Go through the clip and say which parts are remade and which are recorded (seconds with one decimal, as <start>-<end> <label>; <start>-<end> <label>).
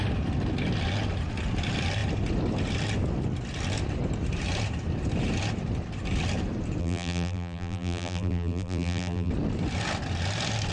0.0-6.8 recorded; 6.8-9.3 remade; 9.3-10.7 recorded